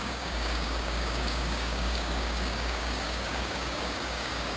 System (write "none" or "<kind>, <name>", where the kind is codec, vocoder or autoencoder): codec, DAC